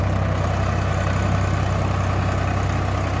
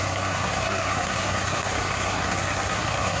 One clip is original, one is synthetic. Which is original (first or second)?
first